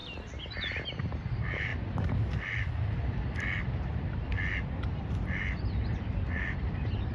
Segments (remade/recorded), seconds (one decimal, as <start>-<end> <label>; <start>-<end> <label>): 0.0-1.7 remade; 1.7-6.0 recorded; 6.0-7.1 remade